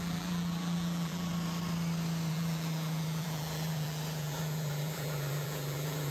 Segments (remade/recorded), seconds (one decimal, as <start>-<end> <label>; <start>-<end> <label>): 0.0-1.3 remade; 1.3-2.3 recorded; 2.3-6.1 remade